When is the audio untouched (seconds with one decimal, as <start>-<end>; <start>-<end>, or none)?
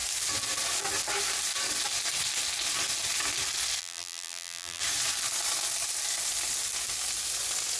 0.0-3.8; 4.8-7.8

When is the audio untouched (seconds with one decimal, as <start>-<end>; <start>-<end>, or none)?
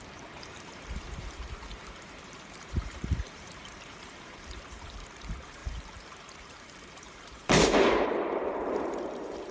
none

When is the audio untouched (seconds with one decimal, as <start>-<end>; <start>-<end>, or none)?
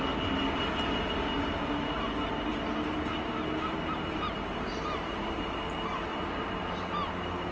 0.0-2.5; 5.5-6.1; 6.9-7.5